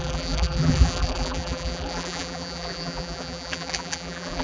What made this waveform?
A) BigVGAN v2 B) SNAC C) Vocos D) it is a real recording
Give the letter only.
A